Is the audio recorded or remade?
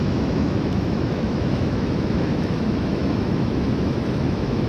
remade